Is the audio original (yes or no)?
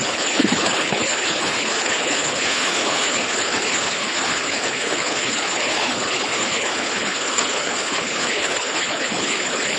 no